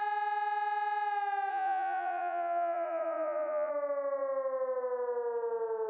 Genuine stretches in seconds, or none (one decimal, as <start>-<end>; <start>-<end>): 0.0-1.5; 3.7-5.9